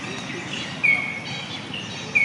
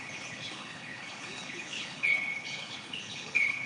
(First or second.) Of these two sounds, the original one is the first